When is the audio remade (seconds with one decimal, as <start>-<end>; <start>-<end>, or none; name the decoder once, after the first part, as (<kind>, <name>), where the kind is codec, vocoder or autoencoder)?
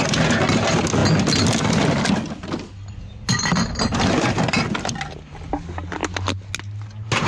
none